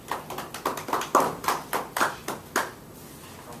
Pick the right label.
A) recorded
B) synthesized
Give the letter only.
A